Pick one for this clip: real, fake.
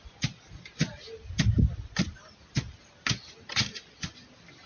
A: real